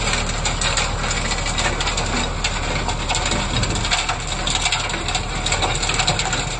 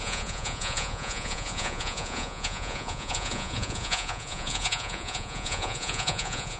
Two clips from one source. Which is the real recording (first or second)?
first